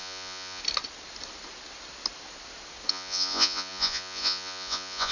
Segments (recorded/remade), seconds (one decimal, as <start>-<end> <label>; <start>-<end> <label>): 0.0-0.6 remade; 0.6-2.9 recorded; 2.9-5.1 remade